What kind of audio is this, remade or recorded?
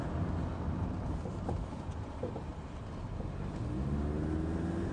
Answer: recorded